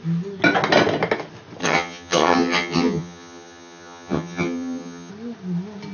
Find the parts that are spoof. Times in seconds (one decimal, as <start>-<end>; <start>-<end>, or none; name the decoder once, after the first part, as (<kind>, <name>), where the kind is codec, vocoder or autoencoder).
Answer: 1.6-5.1 (vocoder, HiFi-GAN)